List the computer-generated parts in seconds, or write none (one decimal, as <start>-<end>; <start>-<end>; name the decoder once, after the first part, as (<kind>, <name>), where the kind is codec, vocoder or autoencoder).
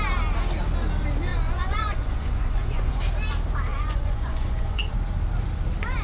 1.3-3.0 (vocoder, Vocos); 3.7-4.9